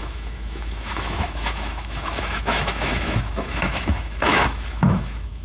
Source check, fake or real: fake